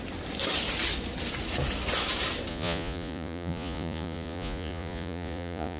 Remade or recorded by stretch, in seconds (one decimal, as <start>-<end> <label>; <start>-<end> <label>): 0.0-2.5 recorded; 2.5-5.8 remade